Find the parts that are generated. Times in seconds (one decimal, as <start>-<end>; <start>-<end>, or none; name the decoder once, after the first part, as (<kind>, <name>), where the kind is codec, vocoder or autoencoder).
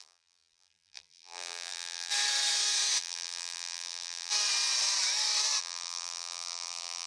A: 0.0-2.1 (vocoder, BigVGAN v2); 3.0-4.3; 5.6-7.1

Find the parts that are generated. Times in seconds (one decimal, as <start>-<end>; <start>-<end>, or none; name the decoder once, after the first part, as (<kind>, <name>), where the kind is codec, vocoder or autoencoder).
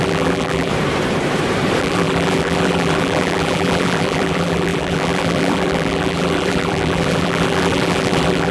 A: 0.0-0.7 (vocoder, BigVGAN v2); 1.8-8.5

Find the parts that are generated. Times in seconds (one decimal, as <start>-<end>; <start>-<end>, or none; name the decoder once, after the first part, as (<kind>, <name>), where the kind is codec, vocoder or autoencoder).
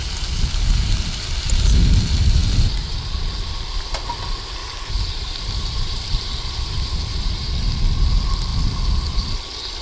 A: 4.6-7.5 (vocoder, BigVGAN v2)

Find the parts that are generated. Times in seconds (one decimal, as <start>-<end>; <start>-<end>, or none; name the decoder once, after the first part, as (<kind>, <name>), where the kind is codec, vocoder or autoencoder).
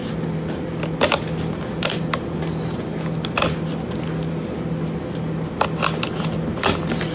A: none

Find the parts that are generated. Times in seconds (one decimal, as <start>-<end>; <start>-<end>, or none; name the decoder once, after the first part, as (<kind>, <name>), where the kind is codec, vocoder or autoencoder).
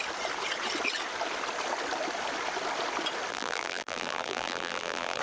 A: 3.3-5.2 (vocoder, BigVGAN v2)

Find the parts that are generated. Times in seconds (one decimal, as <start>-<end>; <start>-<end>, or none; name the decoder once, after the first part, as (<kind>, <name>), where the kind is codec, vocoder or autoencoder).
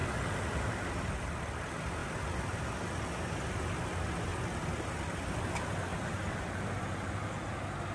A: 4.3-5.3 (vocoder, BigVGAN v2); 5.9-7.5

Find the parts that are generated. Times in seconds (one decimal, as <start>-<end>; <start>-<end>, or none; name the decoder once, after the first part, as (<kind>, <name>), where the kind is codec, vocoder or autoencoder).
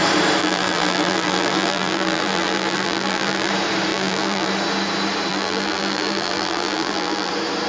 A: 0.4-3.5 (vocoder, BigVGAN v2); 3.9-4.5; 5.3-7.3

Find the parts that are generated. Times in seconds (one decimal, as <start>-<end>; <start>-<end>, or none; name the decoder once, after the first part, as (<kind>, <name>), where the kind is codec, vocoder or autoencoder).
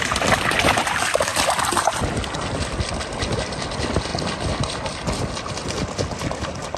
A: none